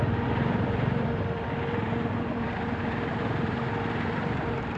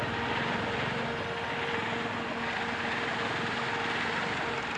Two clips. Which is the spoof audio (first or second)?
first